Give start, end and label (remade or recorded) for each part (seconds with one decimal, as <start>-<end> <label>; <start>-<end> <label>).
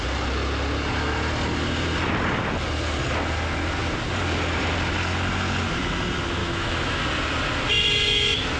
0.0-6.4 recorded; 6.4-7.0 remade; 7.0-8.6 recorded